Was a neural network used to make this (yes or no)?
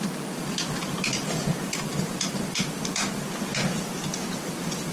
yes